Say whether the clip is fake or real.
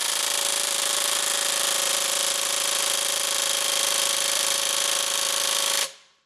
fake